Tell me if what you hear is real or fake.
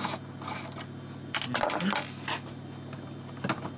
real